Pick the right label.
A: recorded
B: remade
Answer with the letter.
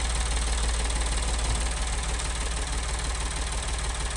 A